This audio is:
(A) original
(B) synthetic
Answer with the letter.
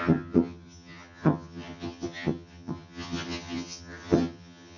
B